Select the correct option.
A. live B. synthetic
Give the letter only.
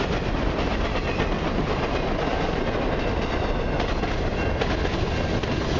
A